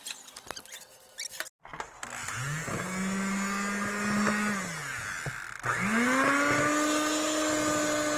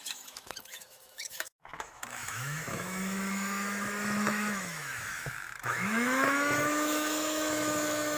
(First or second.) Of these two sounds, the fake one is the second